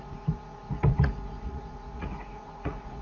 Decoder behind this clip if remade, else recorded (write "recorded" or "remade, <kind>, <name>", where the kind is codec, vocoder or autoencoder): remade, vocoder, Vocos